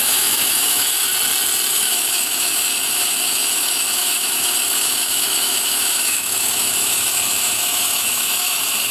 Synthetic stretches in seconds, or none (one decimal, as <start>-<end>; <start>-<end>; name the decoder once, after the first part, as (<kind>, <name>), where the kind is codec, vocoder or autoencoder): 0.0-1.1 (autoencoder, DAC-VAE); 1.7-8.9